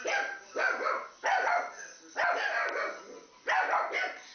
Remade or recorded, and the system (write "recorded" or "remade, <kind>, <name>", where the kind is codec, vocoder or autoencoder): recorded